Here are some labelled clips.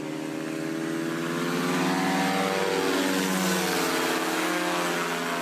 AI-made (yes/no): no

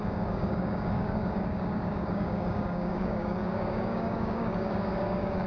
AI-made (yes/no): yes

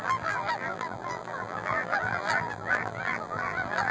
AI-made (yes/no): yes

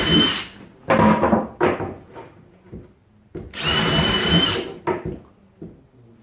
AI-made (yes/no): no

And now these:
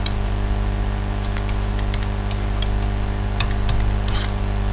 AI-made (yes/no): no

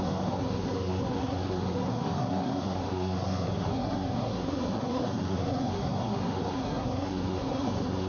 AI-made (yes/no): yes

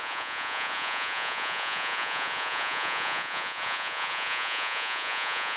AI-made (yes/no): yes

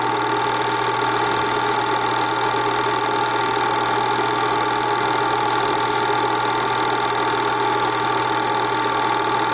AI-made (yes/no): no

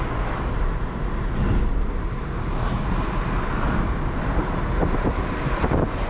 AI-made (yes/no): no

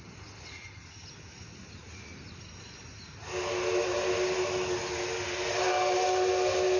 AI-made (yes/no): no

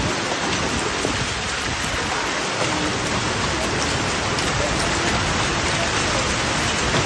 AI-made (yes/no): no